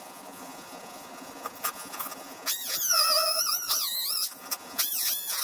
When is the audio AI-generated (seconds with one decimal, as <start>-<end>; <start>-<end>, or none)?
0.0-5.4

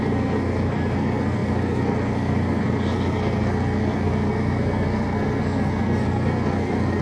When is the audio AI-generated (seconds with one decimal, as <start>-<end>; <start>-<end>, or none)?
0.0-7.0

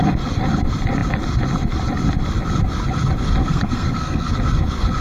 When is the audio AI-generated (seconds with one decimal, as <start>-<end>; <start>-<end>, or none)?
3.4-4.3

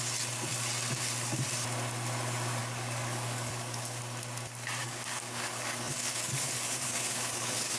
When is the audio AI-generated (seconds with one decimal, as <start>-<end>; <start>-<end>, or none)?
2.6-4.0; 4.8-7.8

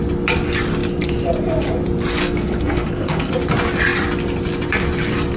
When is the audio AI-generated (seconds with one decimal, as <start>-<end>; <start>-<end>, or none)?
2.2-3.3

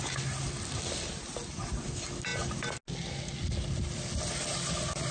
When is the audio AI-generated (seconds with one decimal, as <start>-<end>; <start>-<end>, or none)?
none

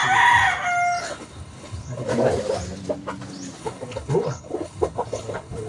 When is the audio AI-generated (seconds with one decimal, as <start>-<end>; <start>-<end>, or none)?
1.0-2.1; 3.6-5.7